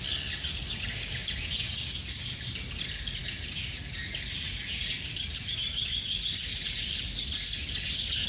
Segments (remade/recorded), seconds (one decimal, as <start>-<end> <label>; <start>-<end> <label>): 0.0-8.3 recorded